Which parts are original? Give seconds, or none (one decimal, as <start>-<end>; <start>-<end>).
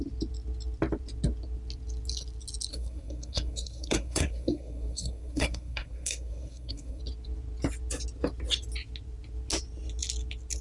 0.0-2.7; 7.0-10.6